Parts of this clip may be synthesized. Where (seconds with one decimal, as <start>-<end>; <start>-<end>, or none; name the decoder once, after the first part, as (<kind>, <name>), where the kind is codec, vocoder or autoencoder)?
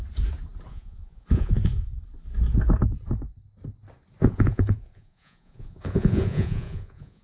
0.7-1.9 (vocoder, Vocos); 4.2-7.2